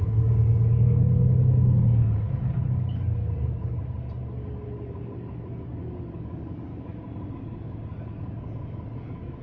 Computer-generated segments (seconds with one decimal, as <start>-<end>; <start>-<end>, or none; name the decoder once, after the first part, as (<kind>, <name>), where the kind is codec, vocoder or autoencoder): 0.0-6.7 (codec, DAC); 7.3-9.4